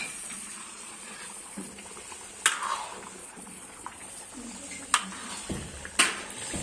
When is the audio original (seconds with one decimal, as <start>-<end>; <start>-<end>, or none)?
1.7-3.2; 4.3-6.6